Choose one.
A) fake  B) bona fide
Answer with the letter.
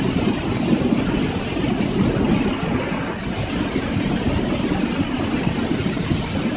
B